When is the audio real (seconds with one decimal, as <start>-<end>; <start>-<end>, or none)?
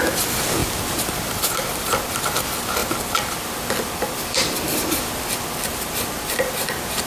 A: 0.0-0.6; 2.2-2.8; 6.5-7.1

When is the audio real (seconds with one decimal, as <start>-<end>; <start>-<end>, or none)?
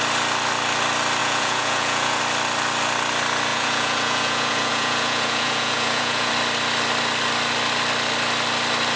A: 0.0-1.2; 2.2-3.5; 6.3-9.0